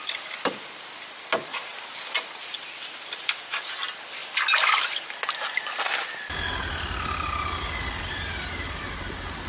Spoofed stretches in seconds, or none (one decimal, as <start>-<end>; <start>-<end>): none